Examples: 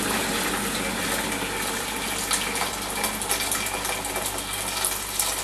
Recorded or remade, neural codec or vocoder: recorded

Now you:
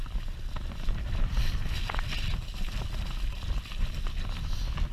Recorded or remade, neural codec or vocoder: recorded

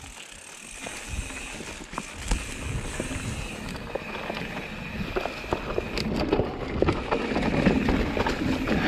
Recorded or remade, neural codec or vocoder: recorded